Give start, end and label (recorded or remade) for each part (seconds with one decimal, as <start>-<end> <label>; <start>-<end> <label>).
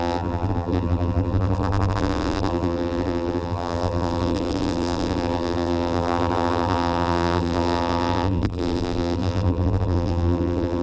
0.0-10.8 remade